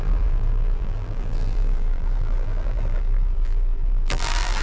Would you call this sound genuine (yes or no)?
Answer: no